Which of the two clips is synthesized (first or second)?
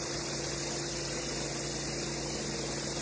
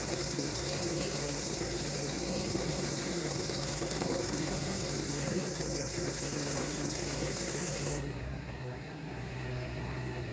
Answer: second